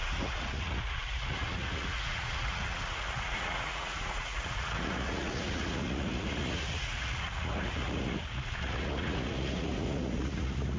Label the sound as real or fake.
fake